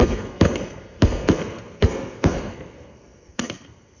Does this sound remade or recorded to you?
remade